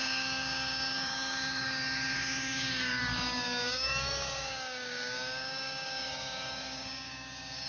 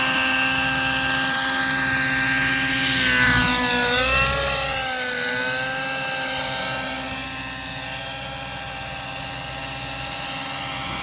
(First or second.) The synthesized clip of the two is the first